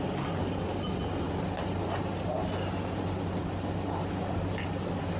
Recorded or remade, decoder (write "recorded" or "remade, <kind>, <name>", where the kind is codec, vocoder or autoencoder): recorded